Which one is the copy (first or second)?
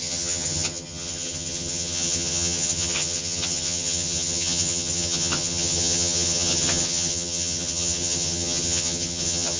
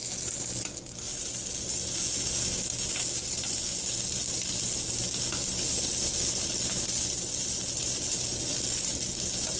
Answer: first